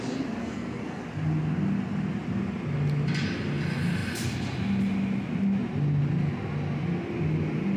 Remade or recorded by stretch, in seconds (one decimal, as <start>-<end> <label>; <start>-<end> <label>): 0.0-0.4 recorded; 0.4-1.0 remade; 1.0-7.8 recorded